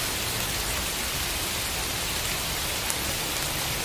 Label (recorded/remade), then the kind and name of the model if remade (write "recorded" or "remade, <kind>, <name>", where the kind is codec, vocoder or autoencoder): recorded